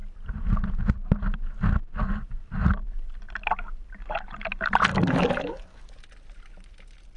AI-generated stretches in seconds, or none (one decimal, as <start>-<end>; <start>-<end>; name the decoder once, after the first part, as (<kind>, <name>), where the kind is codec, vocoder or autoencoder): 4.9-5.9 (codec, DAC)